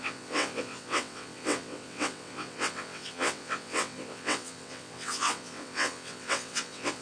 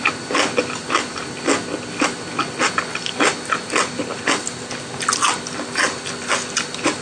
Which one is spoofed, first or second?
first